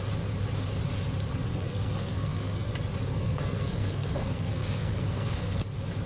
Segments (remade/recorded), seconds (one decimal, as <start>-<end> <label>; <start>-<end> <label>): 0.0-1.5 recorded; 1.5-2.7 remade; 2.7-3.1 recorded; 3.1-5.6 remade; 5.6-6.1 recorded